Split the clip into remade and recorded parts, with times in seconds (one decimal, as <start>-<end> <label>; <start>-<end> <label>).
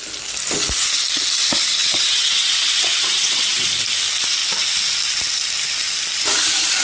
0.0-1.8 recorded; 1.8-3.7 remade; 3.7-6.8 recorded